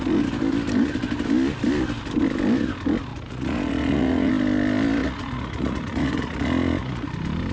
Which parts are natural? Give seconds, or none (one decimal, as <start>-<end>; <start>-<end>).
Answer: 0.0-3.1; 4.3-5.0; 7.1-7.5